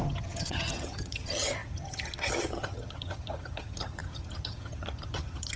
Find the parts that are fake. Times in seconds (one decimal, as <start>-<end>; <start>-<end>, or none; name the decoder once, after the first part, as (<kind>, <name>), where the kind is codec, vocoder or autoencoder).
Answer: 0.0-5.6 (vocoder, HiFi-GAN)